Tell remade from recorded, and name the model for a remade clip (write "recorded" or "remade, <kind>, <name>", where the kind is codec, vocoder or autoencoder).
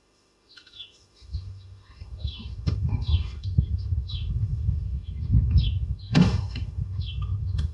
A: remade, autoencoder, DAC-VAE